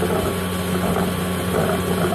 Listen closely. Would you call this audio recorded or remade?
recorded